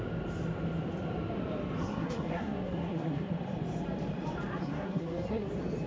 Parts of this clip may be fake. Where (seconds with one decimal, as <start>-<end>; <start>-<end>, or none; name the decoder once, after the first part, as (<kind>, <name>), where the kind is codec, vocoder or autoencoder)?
1.8-3.4 (codec, SNAC); 4.6-5.5